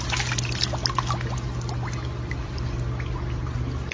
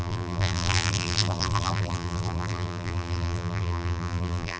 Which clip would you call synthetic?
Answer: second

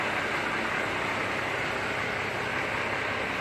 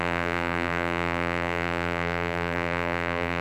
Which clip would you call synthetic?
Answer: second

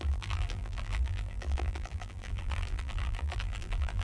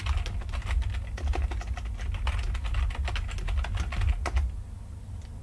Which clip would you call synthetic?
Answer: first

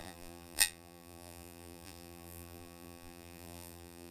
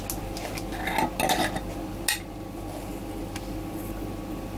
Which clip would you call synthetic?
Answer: first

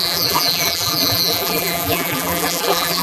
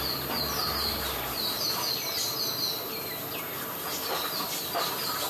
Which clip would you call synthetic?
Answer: first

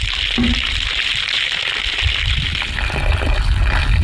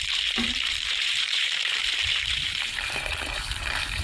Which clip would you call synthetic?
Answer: second